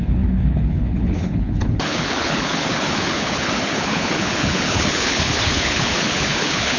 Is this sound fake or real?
fake